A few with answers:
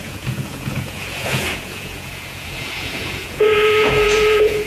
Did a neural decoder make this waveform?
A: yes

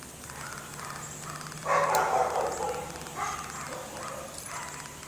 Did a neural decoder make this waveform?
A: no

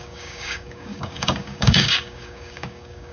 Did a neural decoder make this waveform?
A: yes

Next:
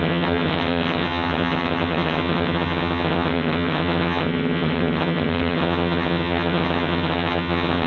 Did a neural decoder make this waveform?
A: yes